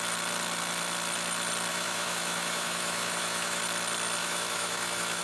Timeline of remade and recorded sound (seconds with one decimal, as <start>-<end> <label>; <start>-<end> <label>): 0.0-1.7 recorded; 1.7-3.6 remade; 3.6-4.2 recorded; 4.2-5.2 remade